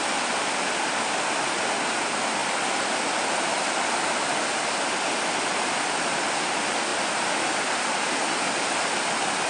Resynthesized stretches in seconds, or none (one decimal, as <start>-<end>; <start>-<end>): none